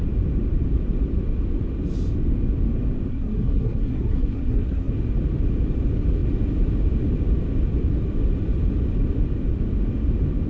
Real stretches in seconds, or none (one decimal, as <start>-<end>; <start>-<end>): 0.0-3.1; 4.9-10.5